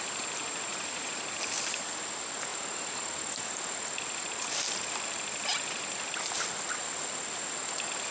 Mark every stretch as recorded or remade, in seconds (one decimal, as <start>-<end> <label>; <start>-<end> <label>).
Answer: 0.0-0.7 recorded; 0.7-1.4 remade; 1.4-8.1 recorded